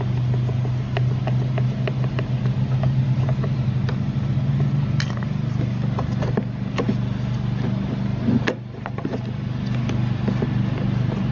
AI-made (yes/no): no